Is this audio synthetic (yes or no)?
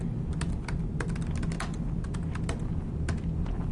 no